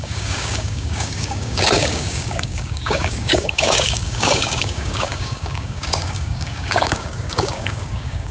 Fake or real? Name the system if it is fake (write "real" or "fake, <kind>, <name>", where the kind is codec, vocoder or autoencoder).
fake, codec, DAC